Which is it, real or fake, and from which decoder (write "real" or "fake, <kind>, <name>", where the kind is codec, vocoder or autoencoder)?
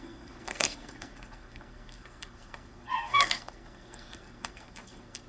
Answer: fake, codec, SNAC